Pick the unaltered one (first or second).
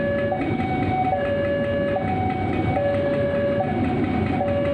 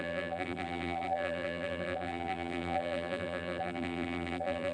first